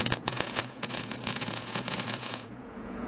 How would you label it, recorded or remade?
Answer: remade